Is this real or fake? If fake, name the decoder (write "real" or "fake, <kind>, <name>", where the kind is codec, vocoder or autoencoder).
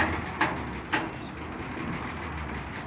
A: real